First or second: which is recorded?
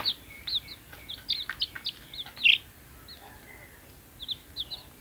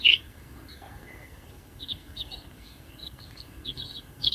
first